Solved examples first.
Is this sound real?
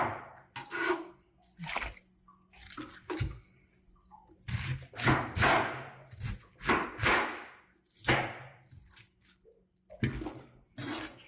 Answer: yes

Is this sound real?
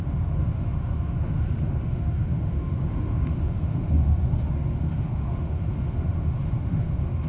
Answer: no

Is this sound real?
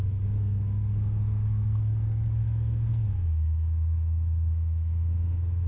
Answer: no